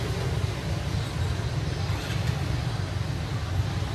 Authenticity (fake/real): real